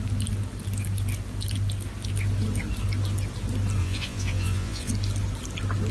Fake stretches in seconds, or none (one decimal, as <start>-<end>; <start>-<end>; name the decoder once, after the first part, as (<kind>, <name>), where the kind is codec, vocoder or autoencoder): 3.8-4.9 (vocoder, Vocos)